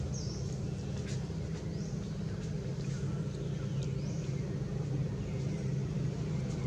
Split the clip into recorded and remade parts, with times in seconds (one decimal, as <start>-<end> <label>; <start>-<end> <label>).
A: 0.0-6.7 recorded

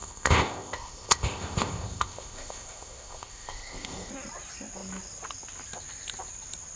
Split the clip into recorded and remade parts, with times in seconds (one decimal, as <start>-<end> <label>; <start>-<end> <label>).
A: 0.0-4.1 remade; 4.1-6.8 recorded